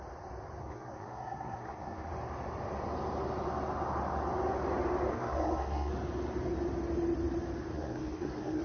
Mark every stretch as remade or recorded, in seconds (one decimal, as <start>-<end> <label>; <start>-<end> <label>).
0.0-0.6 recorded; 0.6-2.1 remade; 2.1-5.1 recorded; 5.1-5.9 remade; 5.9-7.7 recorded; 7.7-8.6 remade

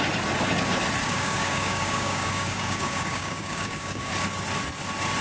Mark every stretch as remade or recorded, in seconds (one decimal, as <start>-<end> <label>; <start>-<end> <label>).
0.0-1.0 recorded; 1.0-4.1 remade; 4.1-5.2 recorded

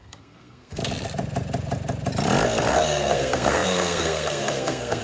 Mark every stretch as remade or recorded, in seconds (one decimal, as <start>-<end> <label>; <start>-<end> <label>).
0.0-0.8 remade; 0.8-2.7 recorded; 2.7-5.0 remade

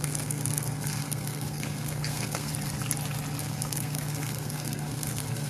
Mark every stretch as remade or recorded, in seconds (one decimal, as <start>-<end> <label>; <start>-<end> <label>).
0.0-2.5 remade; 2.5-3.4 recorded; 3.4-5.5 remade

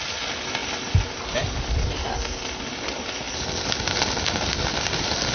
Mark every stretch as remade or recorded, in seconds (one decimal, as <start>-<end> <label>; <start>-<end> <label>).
0.0-5.3 recorded